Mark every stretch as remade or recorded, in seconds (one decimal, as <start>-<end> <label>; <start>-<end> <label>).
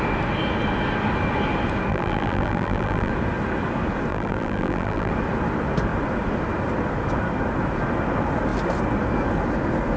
0.0-1.9 recorded; 1.9-3.1 remade; 3.1-4.1 recorded; 4.1-5.1 remade; 5.1-10.0 recorded